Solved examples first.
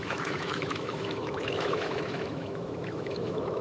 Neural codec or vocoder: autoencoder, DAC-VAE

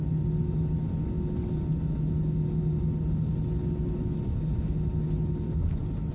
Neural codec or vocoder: none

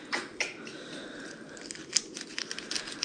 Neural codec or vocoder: none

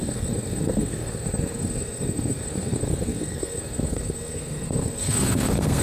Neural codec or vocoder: codec, SNAC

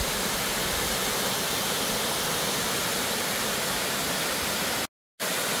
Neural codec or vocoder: none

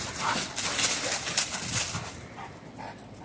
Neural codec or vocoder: none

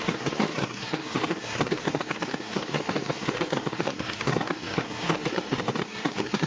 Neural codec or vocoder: codec, SNAC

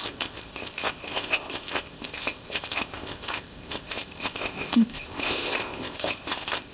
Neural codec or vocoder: codec, ZipCodec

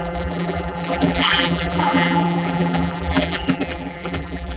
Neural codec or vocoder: vocoder, BigVGAN v2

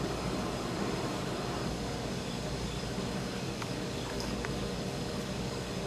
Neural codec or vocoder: codec, DAC